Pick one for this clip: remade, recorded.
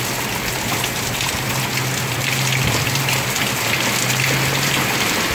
recorded